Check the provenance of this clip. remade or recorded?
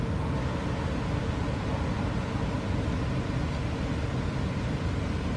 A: recorded